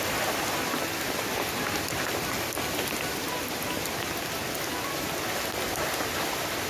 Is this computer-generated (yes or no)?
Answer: no